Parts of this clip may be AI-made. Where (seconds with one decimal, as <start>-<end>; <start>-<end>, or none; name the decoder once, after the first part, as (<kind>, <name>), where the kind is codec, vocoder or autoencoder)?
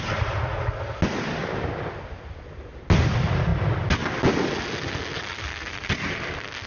none